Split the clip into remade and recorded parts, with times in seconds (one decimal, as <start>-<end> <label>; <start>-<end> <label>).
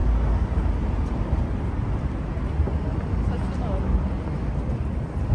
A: 0.0-5.3 recorded